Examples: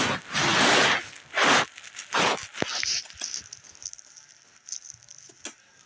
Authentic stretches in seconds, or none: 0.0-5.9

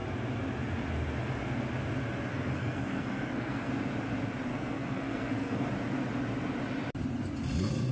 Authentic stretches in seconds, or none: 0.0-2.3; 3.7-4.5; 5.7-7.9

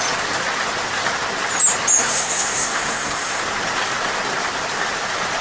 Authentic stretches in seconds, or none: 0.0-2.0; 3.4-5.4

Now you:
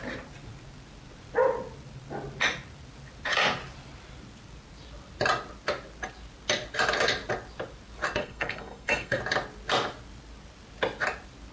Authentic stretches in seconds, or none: 0.0-8.2; 9.2-11.5